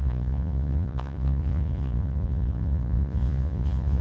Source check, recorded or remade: remade